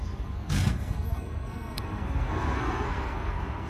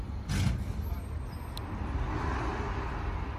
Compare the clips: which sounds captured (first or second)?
second